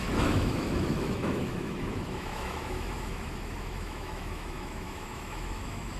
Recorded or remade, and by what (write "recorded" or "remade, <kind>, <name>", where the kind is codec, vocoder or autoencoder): remade, autoencoder, DAC-VAE